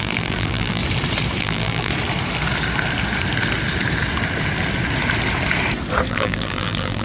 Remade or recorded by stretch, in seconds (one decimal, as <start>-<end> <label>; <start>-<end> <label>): 0.0-0.8 remade; 0.8-1.4 recorded; 1.4-1.9 remade; 1.9-6.1 recorded; 6.1-7.0 remade